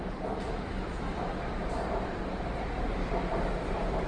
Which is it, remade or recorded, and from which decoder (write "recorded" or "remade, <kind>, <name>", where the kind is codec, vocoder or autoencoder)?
remade, vocoder, BigVGAN v2